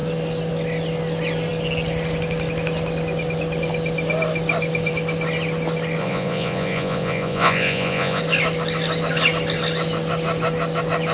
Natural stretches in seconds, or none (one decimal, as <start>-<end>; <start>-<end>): 0.0-6.0; 8.2-11.1